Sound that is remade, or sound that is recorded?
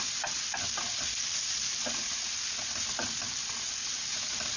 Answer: recorded